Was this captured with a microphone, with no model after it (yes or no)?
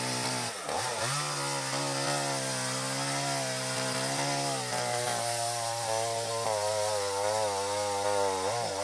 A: yes